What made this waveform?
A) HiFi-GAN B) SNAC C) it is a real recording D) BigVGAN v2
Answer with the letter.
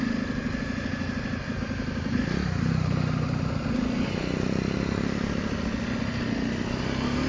C